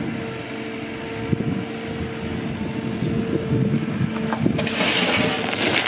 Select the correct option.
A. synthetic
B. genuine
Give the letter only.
B